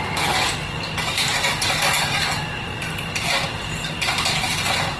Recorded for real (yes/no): yes